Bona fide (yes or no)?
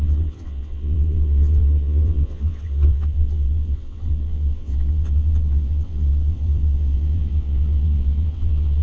no